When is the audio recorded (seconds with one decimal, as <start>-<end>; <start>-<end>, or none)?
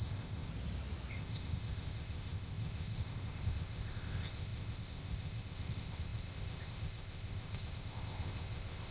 0.5-1.1